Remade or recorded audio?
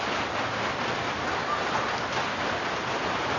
recorded